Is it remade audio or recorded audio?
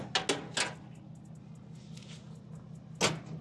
recorded